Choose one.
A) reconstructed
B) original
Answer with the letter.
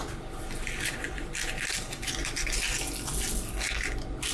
B